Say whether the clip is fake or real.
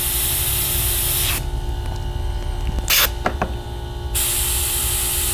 real